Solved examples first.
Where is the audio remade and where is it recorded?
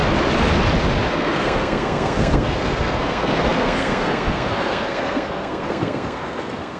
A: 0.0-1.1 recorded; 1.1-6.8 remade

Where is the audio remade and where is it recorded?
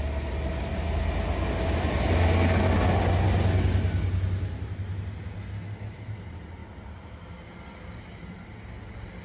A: 0.0-9.2 recorded